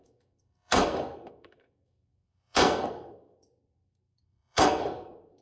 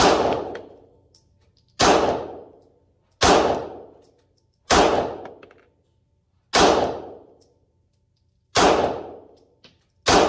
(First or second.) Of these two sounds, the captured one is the second